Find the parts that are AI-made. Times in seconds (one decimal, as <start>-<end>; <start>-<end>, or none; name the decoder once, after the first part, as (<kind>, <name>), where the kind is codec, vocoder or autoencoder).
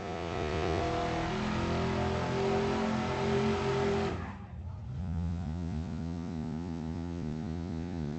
0.0-0.8 (vocoder, Vocos); 5.0-8.2